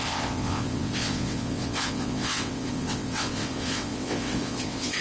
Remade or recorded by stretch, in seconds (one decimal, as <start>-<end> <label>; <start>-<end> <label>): 0.0-5.0 remade